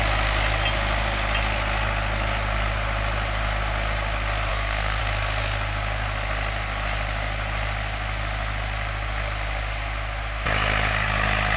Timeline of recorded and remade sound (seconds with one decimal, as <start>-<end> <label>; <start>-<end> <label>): 0.0-4.5 recorded; 4.5-5.0 remade; 5.0-11.6 recorded